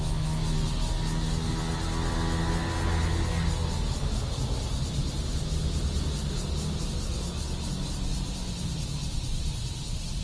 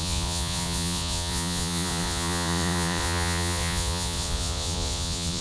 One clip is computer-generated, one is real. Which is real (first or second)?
first